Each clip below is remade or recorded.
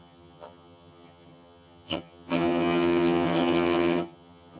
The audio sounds remade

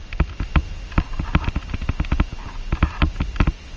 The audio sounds recorded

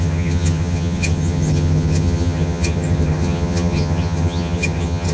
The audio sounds remade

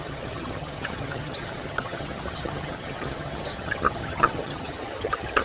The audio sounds remade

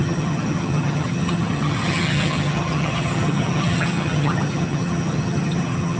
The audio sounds remade